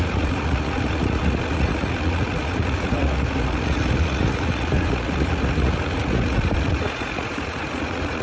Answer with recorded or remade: remade